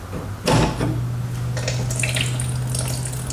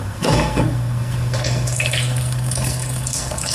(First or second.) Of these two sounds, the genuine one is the first